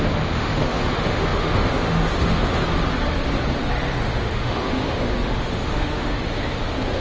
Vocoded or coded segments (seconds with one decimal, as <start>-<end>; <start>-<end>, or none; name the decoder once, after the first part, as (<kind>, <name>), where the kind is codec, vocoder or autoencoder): 0.0-2.6 (autoencoder, DAC-VAE); 4.0-7.0